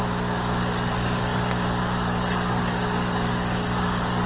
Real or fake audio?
fake